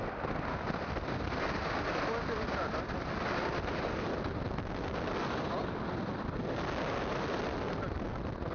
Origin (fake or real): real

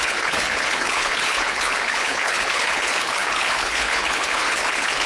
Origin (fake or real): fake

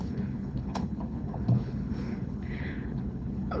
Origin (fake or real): fake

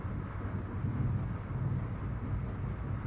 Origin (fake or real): real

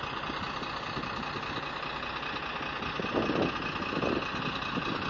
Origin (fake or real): real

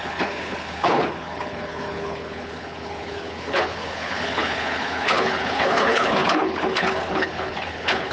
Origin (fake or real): fake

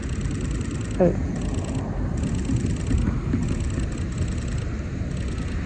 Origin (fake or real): real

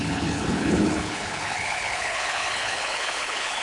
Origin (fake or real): fake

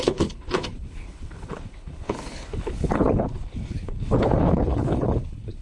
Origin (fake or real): fake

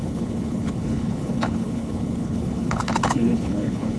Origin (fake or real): fake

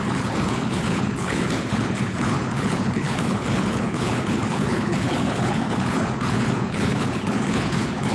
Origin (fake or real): fake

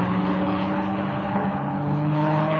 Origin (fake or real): fake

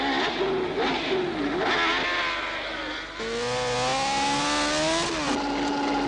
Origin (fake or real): real